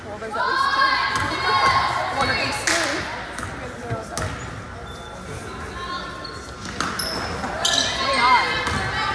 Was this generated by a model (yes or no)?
no